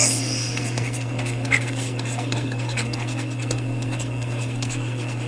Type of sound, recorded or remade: remade